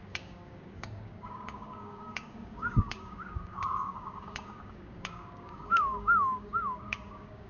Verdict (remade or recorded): remade